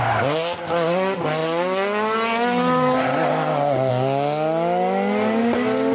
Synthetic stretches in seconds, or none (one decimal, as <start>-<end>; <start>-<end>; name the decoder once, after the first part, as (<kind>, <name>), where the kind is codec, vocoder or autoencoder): none